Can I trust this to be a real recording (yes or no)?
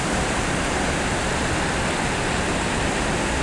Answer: yes